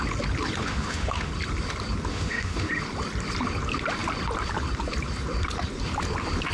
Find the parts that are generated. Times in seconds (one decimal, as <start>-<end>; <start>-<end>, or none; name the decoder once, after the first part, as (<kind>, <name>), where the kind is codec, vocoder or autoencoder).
0.6-1.3 (autoencoder, DAC-VAE); 2.1-2.7